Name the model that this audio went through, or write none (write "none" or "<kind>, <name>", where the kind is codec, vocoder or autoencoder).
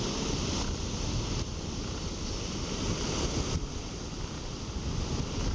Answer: none